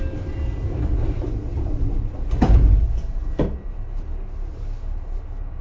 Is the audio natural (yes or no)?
yes